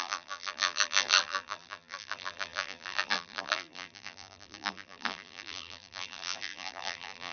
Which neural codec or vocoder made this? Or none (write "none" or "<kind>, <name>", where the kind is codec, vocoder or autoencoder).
vocoder, BigVGAN v2